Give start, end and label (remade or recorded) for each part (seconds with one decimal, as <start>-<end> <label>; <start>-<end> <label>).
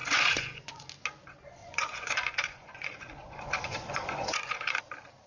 0.0-0.9 remade; 0.9-1.6 recorded; 1.6-4.8 remade; 4.8-5.3 recorded